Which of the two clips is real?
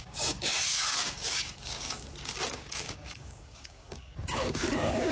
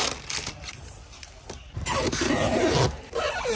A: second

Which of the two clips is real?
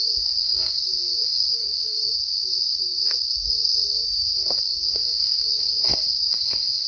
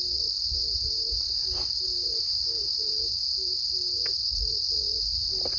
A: second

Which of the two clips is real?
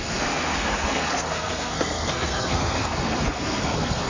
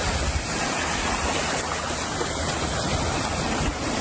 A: second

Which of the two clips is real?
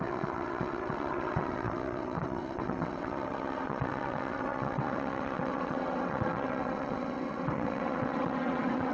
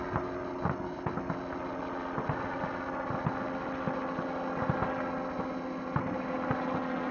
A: second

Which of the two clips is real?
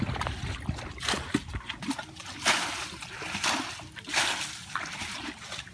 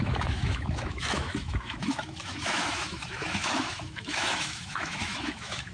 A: first